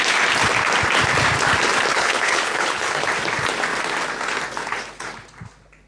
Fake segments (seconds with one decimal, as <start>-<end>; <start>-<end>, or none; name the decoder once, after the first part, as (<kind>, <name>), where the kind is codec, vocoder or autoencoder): 1.9-3.1 (codec, HILCodec)